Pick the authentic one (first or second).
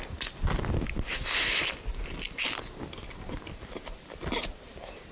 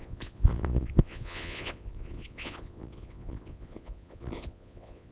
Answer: first